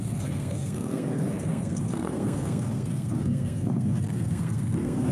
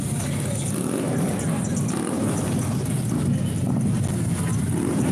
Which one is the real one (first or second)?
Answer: second